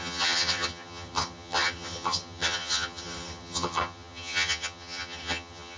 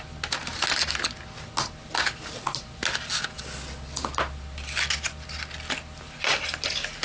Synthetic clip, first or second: first